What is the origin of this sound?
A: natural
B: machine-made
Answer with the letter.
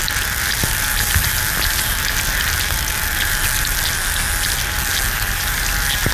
A